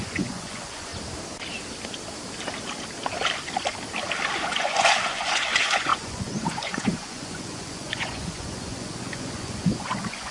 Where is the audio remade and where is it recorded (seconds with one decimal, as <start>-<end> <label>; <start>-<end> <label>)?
0.0-0.9 remade; 0.9-4.4 recorded; 4.4-10.3 remade